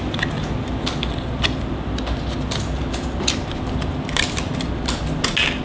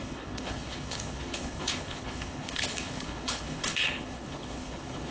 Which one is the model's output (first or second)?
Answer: second